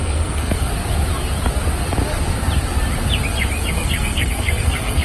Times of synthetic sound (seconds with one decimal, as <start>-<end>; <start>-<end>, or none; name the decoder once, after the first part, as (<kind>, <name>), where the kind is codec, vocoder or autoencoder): 0.0-0.7 (codec, SNAC); 3.7-5.0